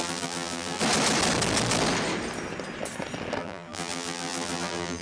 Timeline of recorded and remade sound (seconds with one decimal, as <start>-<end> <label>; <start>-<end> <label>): 0.0-0.8 remade; 0.8-3.4 recorded; 3.4-5.0 remade